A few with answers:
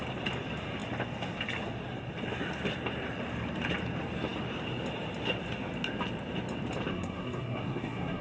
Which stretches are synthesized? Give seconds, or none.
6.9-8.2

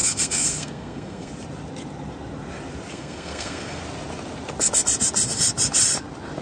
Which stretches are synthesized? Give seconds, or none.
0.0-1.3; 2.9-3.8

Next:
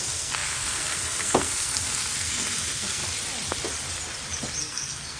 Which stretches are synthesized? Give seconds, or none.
0.0-3.0; 4.6-5.2

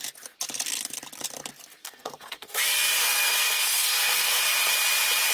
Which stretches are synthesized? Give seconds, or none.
1.8-2.6; 3.0-4.4